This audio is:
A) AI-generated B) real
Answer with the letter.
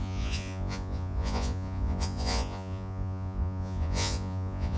A